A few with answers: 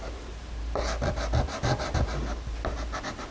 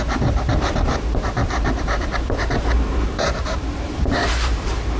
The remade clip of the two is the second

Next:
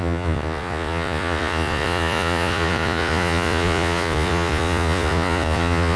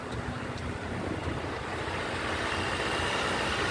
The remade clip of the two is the first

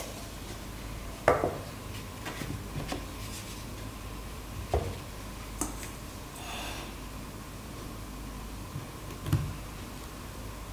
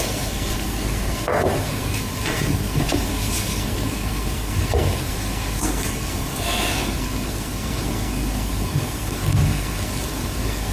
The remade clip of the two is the second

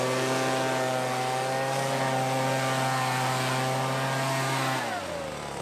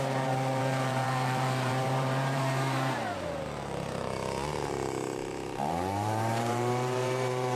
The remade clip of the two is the second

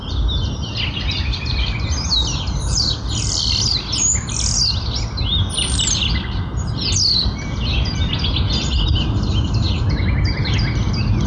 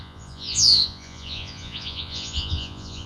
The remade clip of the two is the second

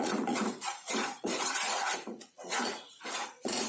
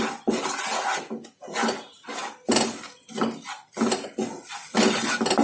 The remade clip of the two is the first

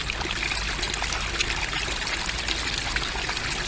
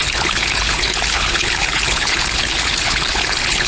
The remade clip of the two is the second